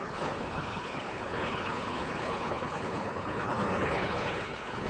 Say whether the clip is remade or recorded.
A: remade